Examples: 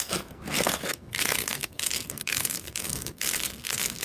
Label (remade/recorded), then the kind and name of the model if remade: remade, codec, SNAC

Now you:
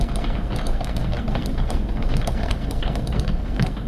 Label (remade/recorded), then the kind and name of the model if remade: remade, codec, SNAC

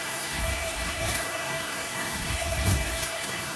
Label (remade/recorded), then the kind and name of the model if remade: remade, codec, SNAC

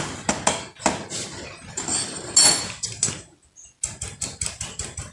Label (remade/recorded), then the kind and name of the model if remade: recorded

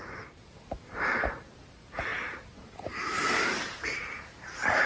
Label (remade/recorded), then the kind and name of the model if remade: recorded